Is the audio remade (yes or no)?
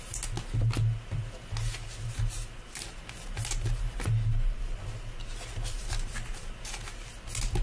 no